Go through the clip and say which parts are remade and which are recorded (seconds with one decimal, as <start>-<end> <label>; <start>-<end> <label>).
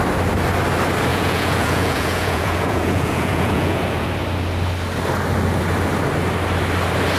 0.0-1.1 recorded; 1.1-4.1 remade; 4.1-7.2 recorded